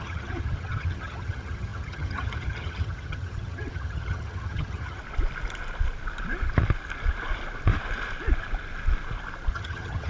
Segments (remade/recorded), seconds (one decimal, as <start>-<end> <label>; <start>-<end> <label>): 0.0-5.0 remade; 5.0-9.5 recorded; 9.5-10.1 remade